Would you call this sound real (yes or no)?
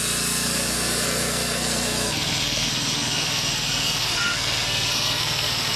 no